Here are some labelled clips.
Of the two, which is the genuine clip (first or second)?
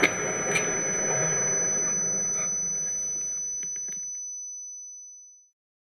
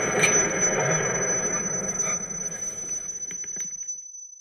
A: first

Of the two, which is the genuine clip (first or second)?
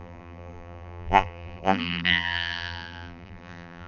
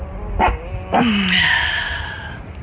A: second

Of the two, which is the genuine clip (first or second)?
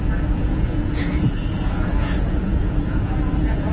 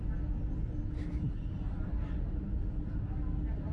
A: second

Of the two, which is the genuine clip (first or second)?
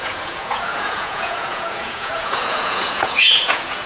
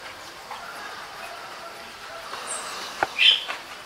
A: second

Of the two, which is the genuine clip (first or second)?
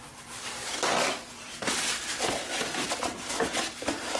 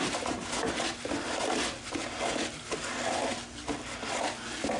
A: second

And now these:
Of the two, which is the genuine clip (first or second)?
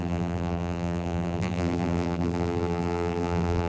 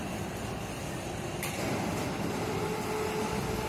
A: second